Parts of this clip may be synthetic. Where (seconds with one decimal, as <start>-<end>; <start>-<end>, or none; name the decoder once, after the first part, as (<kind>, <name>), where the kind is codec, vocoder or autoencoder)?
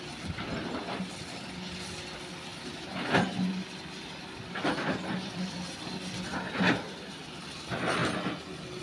0.0-2.5 (vocoder, BigVGAN v2); 3.5-8.0